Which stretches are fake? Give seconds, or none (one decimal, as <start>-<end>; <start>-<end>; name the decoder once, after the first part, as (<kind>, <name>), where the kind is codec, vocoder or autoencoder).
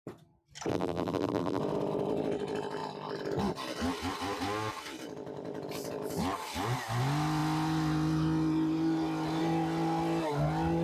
0.7-1.6 (vocoder, BigVGAN v2)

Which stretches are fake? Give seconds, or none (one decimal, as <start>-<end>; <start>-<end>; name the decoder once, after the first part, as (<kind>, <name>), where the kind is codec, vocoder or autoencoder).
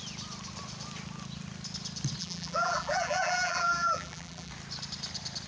2.2-4.5 (vocoder, BigVGAN v2)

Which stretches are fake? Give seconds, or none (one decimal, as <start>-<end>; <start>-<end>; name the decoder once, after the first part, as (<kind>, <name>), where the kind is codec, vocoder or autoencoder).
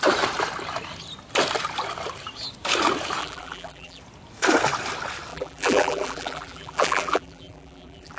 3.2-4.0 (vocoder, BigVGAN v2); 5.3-8.2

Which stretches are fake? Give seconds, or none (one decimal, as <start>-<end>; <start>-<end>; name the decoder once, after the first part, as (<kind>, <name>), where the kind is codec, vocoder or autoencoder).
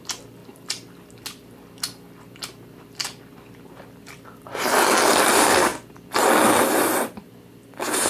0.0-0.4 (vocoder, BigVGAN v2); 5.3-5.7; 7.0-8.1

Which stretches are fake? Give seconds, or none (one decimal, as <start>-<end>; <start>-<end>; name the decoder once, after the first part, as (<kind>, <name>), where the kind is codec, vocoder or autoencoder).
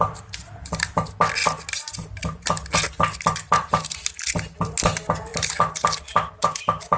none